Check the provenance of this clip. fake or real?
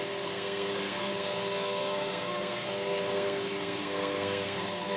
fake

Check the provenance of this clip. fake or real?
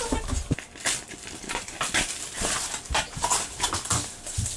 real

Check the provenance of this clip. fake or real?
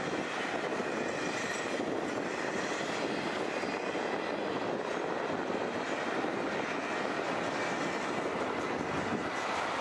real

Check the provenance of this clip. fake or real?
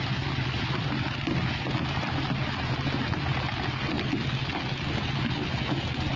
real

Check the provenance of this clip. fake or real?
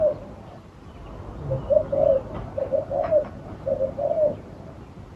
real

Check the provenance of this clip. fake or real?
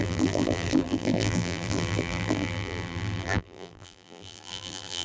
fake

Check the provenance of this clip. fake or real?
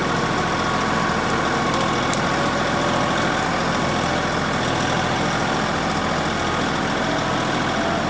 real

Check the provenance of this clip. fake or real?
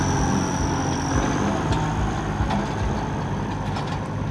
real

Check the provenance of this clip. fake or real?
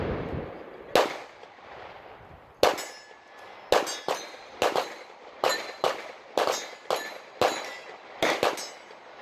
real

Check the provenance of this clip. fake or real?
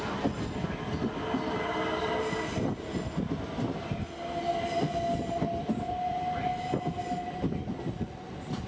real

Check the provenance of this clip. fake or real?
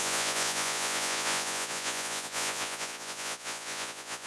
fake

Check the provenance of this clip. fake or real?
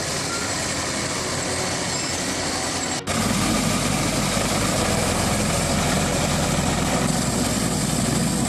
real